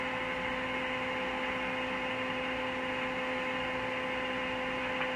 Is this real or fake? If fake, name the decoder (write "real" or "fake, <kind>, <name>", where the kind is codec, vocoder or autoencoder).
real